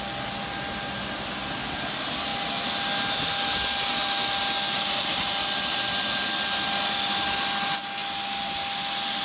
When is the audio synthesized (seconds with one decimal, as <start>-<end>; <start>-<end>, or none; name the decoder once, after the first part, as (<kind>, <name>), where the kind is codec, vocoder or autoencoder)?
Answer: none